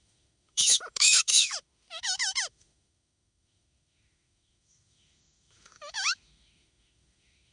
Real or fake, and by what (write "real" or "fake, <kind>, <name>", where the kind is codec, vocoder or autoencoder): fake, autoencoder, DAC-VAE